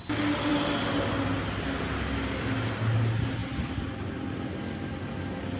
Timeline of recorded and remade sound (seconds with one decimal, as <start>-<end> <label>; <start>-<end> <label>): 0.0-5.6 recorded